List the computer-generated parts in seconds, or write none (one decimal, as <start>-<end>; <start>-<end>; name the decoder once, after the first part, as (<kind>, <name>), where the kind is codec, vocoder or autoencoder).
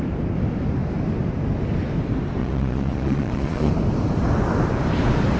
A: 2.4-3.7 (vocoder, Vocos)